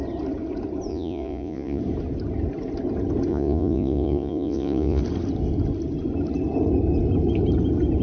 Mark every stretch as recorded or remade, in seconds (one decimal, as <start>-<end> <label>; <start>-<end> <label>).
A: 0.0-0.9 recorded; 0.9-1.8 remade; 1.8-3.3 recorded; 3.3-5.0 remade; 5.0-8.0 recorded